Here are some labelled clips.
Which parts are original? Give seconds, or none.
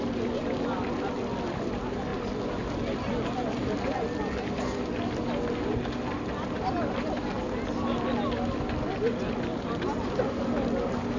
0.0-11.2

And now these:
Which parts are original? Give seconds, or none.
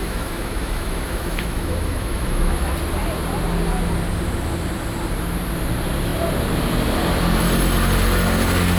2.7-8.8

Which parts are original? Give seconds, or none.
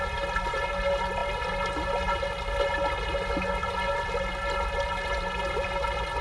0.0-6.2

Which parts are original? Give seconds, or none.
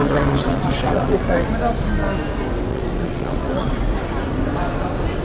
1.5-2.7; 3.8-5.2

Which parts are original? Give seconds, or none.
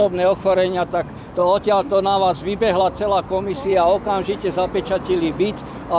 0.0-6.0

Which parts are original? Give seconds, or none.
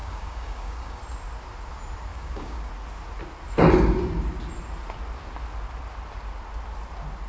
1.0-2.1; 2.7-7.3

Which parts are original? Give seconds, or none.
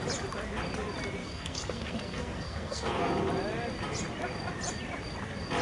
0.0-1.2; 3.1-5.6